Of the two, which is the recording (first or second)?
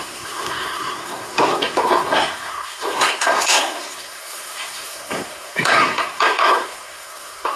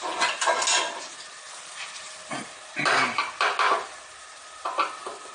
second